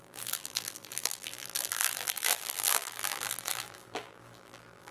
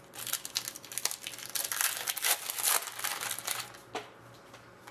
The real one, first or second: second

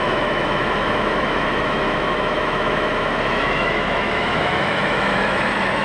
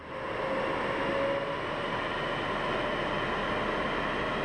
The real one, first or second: second